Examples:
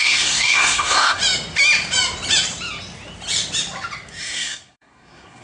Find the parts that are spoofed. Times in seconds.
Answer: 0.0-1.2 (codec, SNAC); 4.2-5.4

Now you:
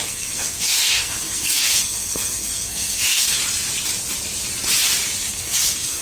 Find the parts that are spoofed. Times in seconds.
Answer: 0.0-3.4 (codec, SNAC); 5.3-6.0